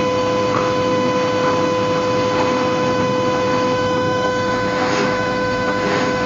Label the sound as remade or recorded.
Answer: remade